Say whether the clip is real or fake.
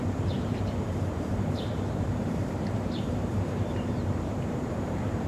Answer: fake